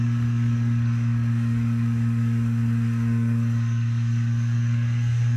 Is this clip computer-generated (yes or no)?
yes